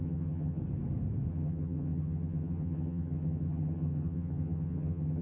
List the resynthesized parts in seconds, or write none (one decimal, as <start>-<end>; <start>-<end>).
0.0-0.6; 1.3-5.2